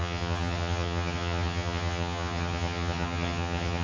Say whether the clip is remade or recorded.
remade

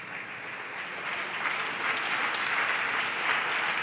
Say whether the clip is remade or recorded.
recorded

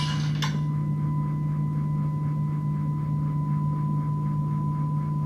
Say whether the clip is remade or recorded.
recorded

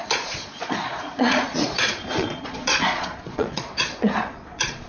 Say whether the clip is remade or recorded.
remade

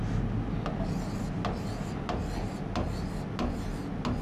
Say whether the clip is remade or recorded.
recorded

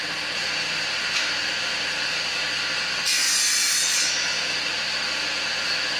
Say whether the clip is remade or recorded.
recorded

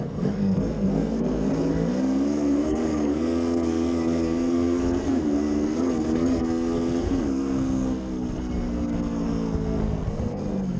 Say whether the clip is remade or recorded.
remade